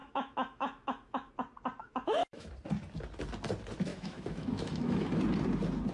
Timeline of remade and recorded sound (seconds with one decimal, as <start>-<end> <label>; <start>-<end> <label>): 0.0-1.3 remade; 1.3-1.8 recorded; 1.8-2.5 remade; 2.5-3.9 recorded; 3.9-5.2 remade; 5.2-5.9 recorded